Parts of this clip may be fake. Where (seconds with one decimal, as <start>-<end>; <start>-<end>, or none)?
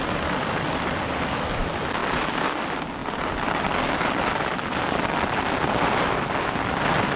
none